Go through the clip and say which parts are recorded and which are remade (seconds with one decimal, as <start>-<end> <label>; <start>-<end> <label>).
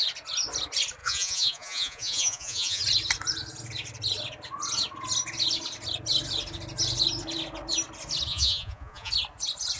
0.0-1.0 recorded; 1.0-2.8 remade; 2.8-8.3 recorded; 8.3-9.1 remade; 9.1-9.8 recorded